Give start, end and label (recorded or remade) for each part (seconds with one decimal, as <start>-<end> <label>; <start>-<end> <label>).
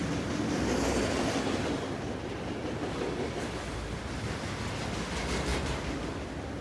0.0-6.6 recorded